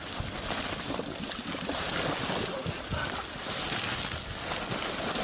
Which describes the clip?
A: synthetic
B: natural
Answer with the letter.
B